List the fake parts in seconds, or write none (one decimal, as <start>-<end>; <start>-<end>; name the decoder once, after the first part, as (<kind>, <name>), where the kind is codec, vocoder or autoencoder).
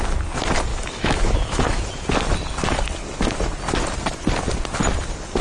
0.7-1.8 (autoencoder, DAC-VAE)